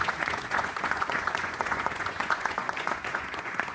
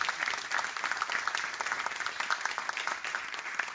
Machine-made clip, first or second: first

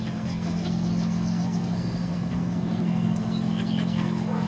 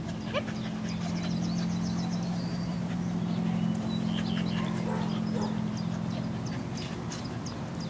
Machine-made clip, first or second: first